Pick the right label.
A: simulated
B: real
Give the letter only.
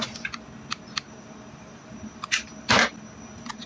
B